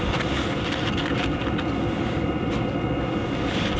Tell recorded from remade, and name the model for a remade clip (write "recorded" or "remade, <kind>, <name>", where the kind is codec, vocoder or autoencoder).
recorded